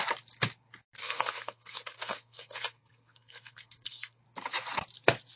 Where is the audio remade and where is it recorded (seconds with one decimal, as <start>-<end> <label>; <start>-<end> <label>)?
0.0-1.0 recorded; 1.0-4.2 remade; 4.2-5.4 recorded